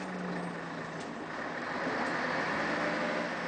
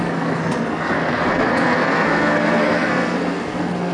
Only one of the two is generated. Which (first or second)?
second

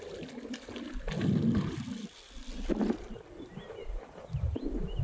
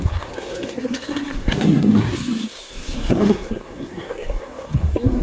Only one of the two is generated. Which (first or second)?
second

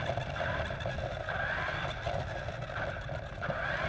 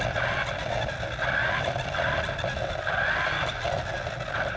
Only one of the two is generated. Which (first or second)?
first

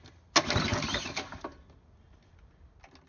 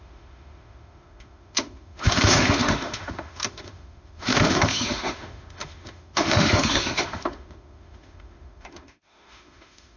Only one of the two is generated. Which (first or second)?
second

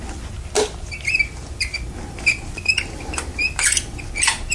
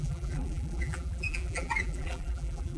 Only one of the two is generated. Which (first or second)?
second